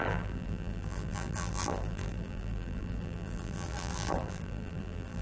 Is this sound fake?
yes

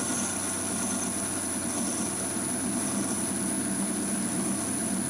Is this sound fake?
no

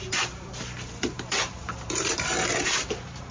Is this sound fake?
yes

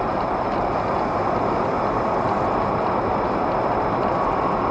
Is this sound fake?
no